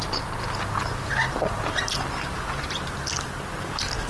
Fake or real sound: real